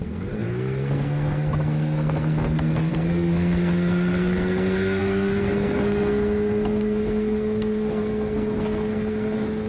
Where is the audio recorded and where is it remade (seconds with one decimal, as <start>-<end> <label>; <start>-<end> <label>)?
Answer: 0.0-9.7 remade